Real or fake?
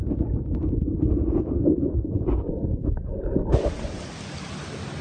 real